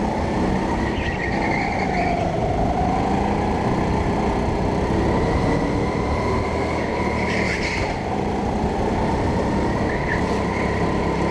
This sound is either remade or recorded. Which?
recorded